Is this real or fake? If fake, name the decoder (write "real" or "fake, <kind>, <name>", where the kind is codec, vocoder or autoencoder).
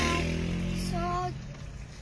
real